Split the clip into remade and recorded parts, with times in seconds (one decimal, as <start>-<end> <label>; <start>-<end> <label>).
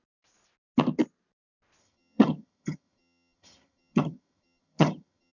0.0-1.8 recorded; 1.8-5.3 remade